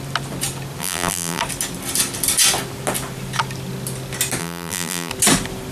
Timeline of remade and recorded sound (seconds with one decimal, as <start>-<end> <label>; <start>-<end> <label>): 0.0-0.8 recorded; 0.8-1.4 remade; 1.4-4.4 recorded; 4.4-5.1 remade; 5.1-5.7 recorded